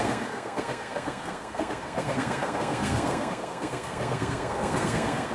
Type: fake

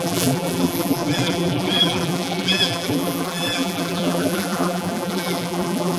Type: fake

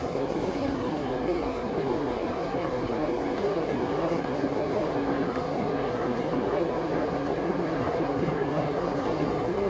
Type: fake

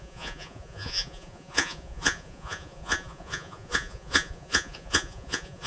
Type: fake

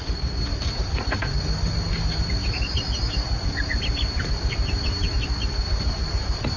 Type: real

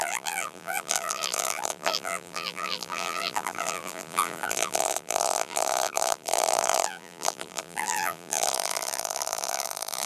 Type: fake